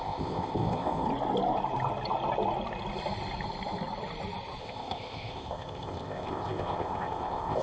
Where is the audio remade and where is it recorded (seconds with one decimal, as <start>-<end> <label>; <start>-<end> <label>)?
0.0-1.1 remade; 1.1-4.6 recorded; 4.6-7.6 remade